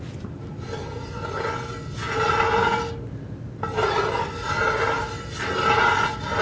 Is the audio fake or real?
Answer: real